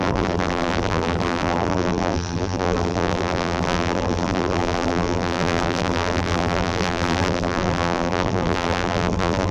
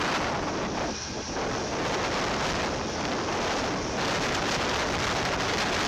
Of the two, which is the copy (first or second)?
first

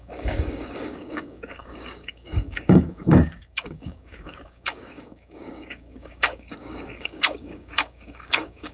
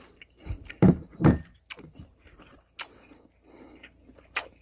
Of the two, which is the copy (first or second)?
first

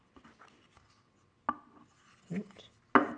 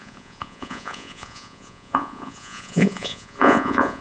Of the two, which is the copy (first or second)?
second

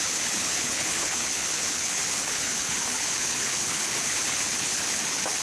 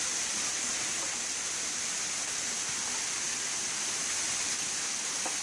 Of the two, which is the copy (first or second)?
first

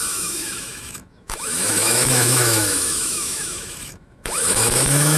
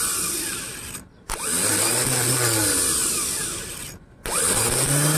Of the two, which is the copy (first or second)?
first